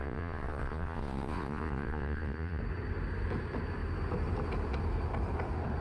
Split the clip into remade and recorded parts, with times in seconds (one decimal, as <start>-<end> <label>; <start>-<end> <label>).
0.0-2.6 remade; 2.6-5.8 recorded

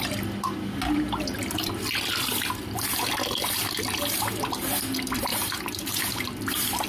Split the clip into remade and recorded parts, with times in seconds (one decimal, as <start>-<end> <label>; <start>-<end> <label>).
0.0-5.3 recorded; 5.3-6.9 remade

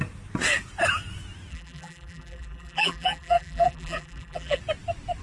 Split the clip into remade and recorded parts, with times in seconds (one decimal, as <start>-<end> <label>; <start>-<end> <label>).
0.0-1.5 recorded; 1.5-4.6 remade; 4.6-5.2 recorded

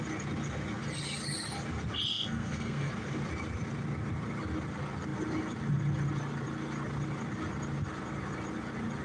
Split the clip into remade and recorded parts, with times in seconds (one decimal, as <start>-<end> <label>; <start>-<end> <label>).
0.0-2.1 recorded; 2.1-2.9 remade; 2.9-9.0 recorded